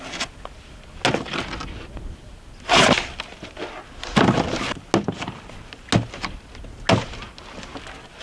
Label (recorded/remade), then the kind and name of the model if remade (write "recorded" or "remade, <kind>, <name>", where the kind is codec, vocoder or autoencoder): recorded